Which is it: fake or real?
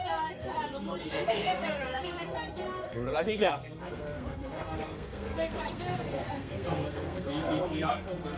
fake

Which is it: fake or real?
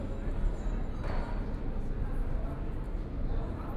real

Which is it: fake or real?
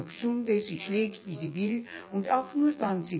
fake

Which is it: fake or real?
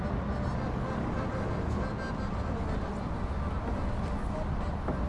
real